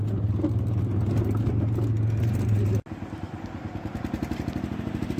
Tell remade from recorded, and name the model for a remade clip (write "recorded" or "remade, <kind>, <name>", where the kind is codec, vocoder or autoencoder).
recorded